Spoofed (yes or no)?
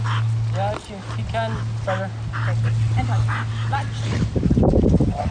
no